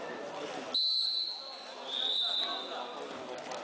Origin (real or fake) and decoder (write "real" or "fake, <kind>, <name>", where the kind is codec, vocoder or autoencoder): real